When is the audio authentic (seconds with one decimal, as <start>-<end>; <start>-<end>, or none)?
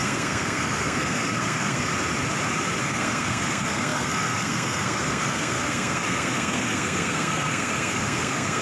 1.9-2.8